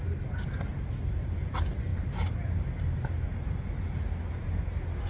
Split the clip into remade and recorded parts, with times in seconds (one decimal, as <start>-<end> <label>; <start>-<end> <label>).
0.0-5.1 recorded